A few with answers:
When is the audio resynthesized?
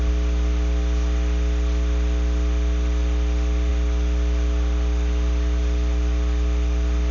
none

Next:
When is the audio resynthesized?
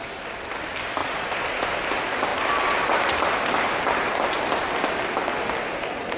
1.0-1.7 (vocoder, Vocos)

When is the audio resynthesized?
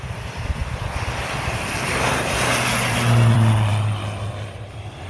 0.0-0.6 (vocoder, BigVGAN v2); 2.1-3.7; 4.3-5.1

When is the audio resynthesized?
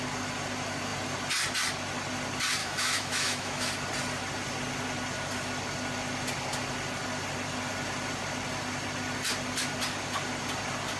2.6-3.7 (autoencoder, DAC-VAE)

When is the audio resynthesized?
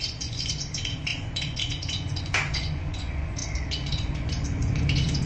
0.0-5.3 (vocoder, Vocos)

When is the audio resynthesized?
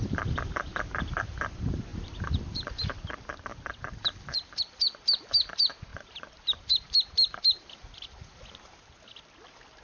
0.7-1.2 (vocoder, BigVGAN v2); 1.9-3.1; 3.5-4.6; 5.9-8.4